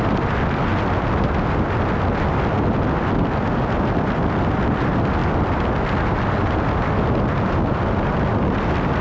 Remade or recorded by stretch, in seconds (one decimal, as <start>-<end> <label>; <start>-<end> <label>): 0.0-9.0 recorded